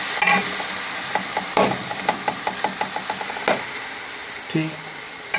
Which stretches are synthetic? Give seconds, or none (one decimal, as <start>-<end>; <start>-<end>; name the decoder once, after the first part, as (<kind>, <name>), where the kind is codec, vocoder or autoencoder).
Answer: none